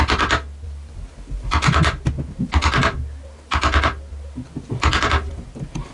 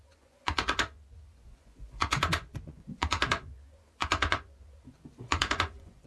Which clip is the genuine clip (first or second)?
first